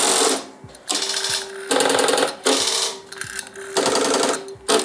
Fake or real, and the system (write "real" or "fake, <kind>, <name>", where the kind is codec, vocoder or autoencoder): real